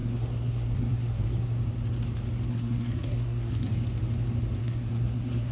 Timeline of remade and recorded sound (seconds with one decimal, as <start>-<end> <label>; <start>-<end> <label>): 0.0-1.6 remade; 1.6-2.5 recorded; 2.5-3.7 remade; 3.7-4.6 recorded; 4.6-5.5 remade